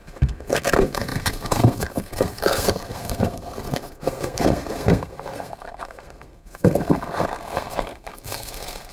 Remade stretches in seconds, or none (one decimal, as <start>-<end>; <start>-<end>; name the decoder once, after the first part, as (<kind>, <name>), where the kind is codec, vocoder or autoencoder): 0.0-8.9 (codec, SNAC)